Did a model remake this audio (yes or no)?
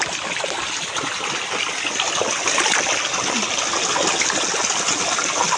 no